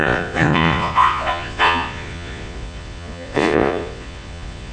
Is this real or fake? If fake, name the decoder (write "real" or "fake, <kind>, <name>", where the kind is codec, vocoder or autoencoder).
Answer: fake, vocoder, Vocos